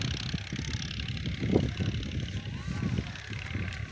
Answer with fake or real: real